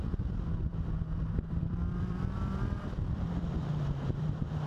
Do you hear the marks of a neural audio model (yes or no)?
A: yes